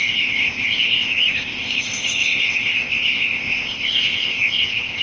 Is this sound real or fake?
fake